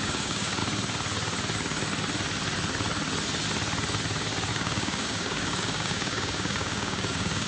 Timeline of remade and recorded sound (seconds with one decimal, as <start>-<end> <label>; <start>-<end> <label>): 0.0-0.6 remade; 0.6-4.5 recorded; 4.5-7.5 remade